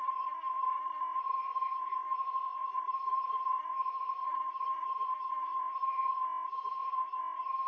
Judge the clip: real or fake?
fake